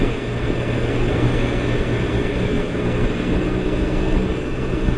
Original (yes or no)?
no